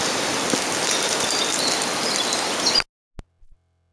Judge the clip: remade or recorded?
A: recorded